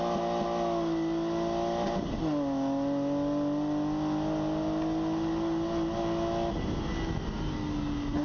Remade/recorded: recorded